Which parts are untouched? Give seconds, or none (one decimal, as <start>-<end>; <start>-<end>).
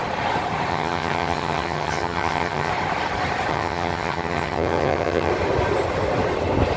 0.0-0.7; 2.7-3.5; 5.3-6.8